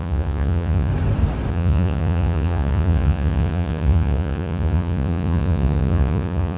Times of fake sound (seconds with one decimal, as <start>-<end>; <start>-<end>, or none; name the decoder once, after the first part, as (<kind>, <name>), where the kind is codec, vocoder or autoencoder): 0.0-0.9 (vocoder, Vocos); 1.5-6.6